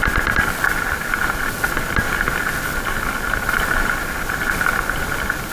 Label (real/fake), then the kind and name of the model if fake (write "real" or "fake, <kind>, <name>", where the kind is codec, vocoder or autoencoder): real